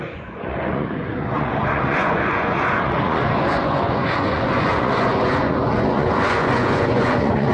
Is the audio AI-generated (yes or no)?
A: yes